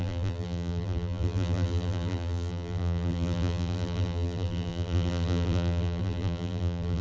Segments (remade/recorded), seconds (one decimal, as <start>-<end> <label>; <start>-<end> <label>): 0.0-7.0 remade